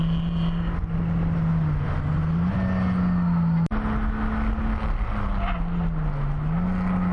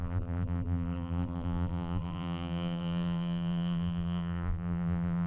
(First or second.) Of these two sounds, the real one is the first